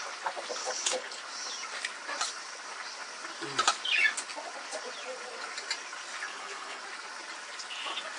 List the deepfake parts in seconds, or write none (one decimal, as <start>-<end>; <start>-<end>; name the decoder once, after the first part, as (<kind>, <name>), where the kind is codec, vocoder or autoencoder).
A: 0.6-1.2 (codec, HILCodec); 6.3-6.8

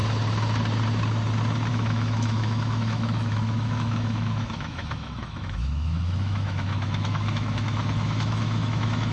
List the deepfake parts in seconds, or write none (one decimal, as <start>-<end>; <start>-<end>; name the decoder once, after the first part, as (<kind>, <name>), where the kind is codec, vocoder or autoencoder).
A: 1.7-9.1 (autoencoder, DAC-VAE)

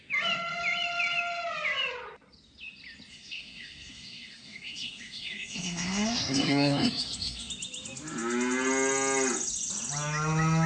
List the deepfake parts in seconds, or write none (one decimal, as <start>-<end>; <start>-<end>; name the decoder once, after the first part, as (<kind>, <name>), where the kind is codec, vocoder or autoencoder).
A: 3.1-7.5 (codec, SNAC)